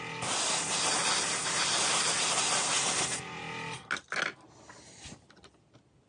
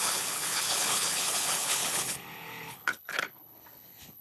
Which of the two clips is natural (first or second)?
first